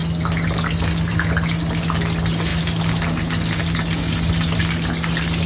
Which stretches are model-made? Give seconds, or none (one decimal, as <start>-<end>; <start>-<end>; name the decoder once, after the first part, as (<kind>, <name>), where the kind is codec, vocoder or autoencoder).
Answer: none